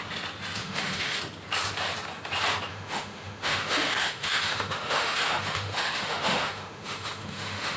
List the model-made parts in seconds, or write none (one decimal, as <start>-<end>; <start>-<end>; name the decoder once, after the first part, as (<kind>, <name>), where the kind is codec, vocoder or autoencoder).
0.6-1.2 (autoencoder, DAC-VAE); 2.7-7.8